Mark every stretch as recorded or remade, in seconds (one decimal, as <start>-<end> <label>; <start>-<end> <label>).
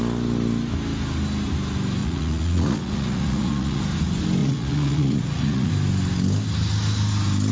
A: 0.0-2.0 recorded; 2.0-3.8 remade; 3.8-4.4 recorded; 4.4-5.7 remade; 5.7-7.5 recorded